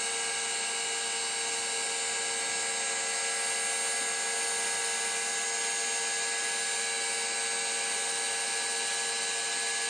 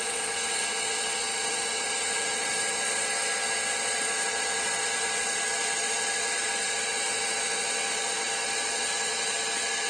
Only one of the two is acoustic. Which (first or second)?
first